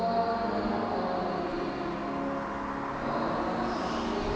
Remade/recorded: recorded